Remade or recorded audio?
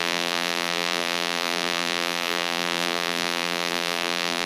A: remade